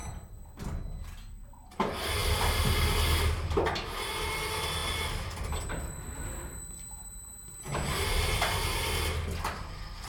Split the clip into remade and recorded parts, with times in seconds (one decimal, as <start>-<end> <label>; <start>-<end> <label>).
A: 0.0-0.5 remade; 0.5-10.1 recorded